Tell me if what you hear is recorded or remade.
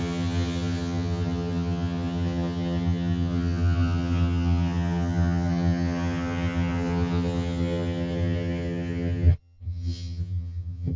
remade